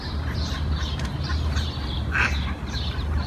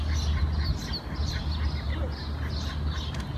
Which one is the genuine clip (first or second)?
second